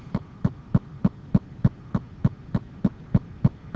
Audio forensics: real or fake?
real